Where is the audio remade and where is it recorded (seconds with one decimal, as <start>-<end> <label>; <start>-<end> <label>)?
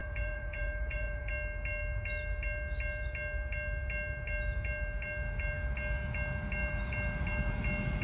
0.0-1.3 remade; 1.3-8.0 recorded